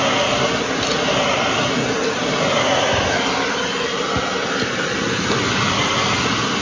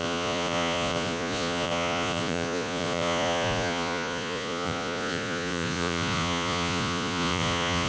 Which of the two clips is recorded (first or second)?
first